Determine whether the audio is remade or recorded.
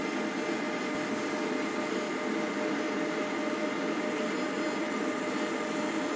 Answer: recorded